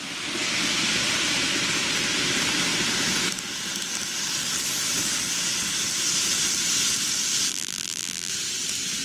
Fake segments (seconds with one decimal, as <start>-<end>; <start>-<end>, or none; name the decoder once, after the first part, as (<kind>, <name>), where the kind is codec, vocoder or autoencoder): 7.5-8.3 (vocoder, BigVGAN v2)